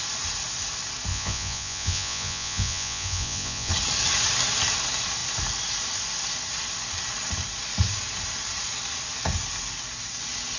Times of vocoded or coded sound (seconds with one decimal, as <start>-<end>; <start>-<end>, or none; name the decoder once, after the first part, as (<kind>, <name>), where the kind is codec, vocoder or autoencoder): 1.1-3.7 (vocoder, Vocos)